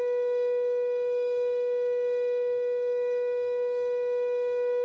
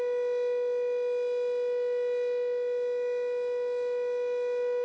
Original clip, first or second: second